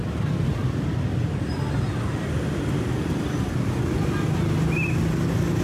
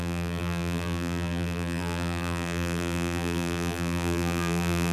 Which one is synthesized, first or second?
second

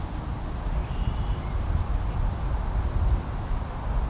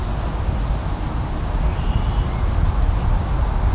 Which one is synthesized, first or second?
first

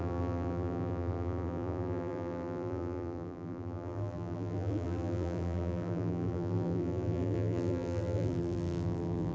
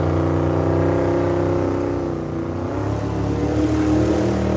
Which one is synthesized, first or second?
first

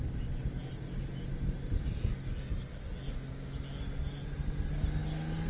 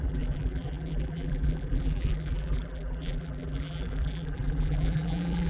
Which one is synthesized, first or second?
second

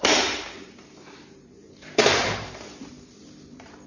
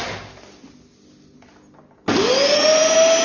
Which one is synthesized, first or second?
first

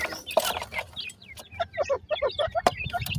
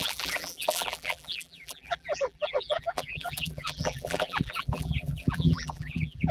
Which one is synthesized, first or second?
second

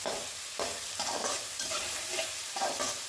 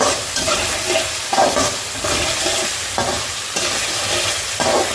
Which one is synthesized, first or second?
first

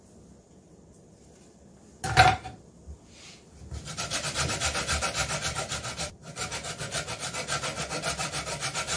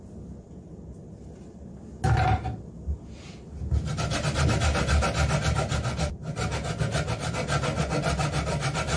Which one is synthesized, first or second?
first